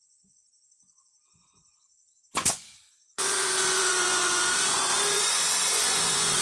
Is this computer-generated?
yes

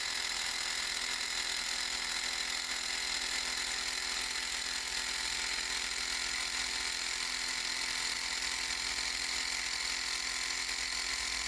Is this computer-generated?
no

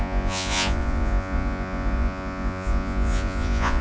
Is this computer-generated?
yes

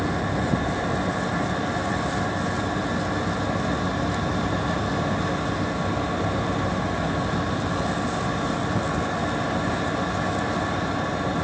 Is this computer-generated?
no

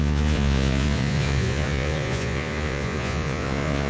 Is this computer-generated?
yes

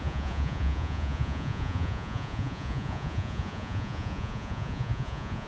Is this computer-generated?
yes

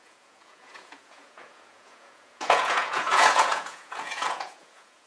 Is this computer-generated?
yes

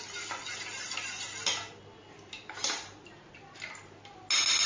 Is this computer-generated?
no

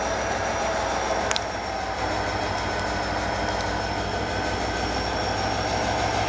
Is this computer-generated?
no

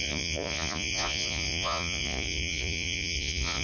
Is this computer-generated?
yes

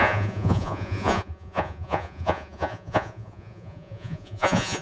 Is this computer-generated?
yes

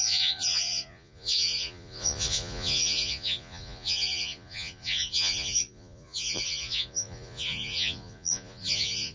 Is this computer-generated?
yes